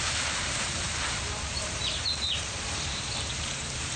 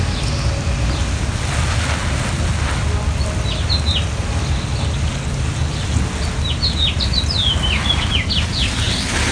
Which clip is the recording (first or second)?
second